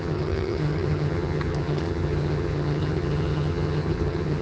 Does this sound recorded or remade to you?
remade